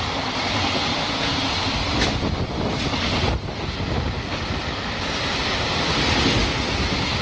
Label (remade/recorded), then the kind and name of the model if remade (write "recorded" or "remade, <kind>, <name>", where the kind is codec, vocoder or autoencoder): recorded